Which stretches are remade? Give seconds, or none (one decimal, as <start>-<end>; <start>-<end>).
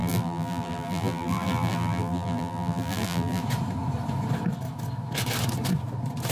0.0-3.4